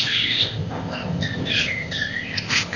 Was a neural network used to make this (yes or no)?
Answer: yes